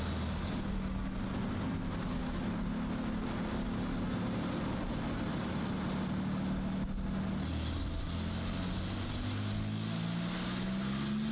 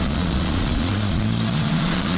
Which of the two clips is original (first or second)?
first